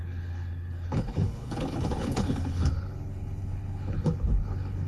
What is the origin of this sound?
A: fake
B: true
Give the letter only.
A